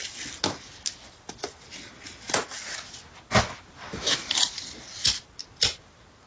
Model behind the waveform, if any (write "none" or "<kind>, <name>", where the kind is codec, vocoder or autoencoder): none